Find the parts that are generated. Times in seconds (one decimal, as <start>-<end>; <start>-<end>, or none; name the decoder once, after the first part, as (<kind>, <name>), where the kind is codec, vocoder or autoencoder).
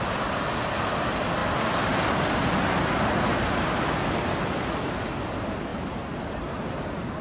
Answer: 5.7-7.2 (vocoder, BigVGAN v2)